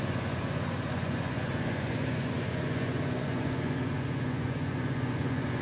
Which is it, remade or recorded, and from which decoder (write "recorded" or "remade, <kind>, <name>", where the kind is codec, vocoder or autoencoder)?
remade, vocoder, Vocos